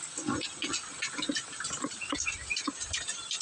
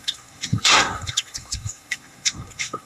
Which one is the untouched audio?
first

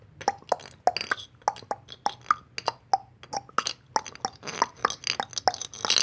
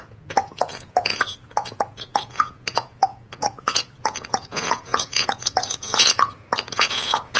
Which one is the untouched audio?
first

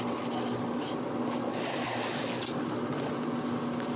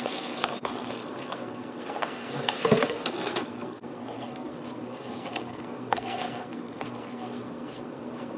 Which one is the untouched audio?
first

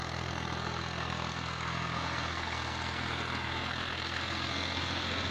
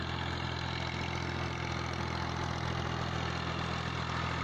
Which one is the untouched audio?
second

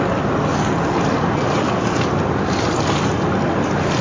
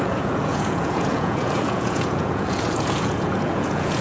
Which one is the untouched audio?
first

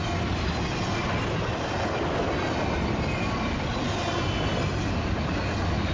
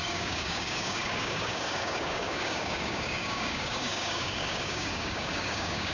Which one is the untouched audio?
first